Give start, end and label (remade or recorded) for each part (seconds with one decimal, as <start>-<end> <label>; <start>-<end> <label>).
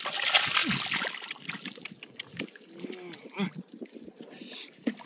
0.0-5.1 recorded